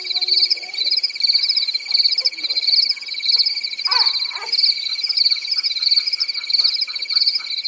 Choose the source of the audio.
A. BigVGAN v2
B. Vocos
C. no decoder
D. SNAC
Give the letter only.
C